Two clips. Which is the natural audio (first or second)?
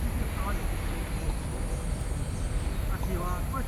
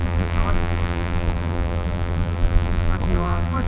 first